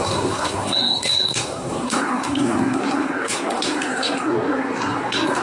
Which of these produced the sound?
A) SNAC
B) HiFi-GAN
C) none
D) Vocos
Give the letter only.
A